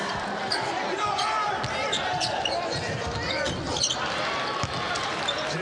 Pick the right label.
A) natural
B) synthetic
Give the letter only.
A